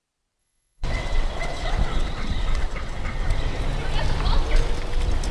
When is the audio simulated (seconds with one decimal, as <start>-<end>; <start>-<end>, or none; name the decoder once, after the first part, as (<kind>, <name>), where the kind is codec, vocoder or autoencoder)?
0.4-3.6 (vocoder, WaveNeXt)